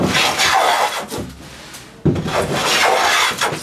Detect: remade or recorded recorded